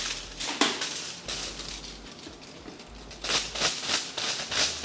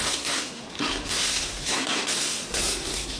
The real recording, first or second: first